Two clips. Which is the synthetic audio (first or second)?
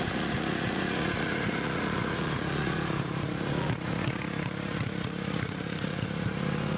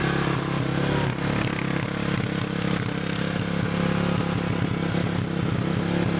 first